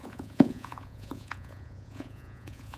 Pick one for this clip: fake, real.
fake